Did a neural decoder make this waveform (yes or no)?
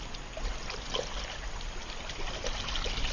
no